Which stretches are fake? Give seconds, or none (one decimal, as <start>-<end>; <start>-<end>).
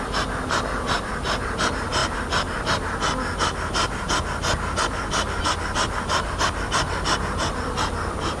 none